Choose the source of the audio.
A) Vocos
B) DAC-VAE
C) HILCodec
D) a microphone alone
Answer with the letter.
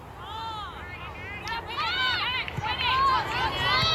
D